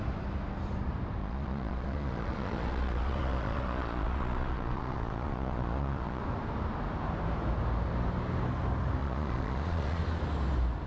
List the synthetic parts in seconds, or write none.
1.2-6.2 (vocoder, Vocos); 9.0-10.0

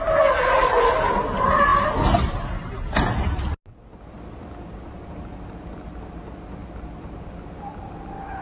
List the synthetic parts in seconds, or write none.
none

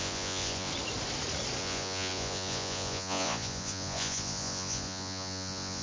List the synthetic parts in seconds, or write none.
0.0-0.7 (vocoder, Vocos); 1.6-5.8

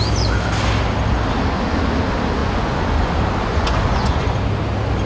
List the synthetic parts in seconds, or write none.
2.4-3.1 (vocoder, Vocos); 3.5-4.4

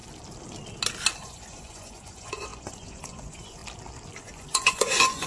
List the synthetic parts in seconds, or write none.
1.2-3.6 (vocoder, Vocos); 4.2-5.3

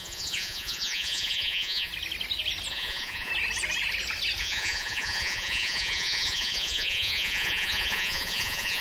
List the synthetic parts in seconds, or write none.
0.0-1.9 (vocoder, Vocos); 2.7-3.3; 4.4-8.8

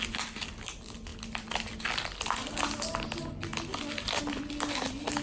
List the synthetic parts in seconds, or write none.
none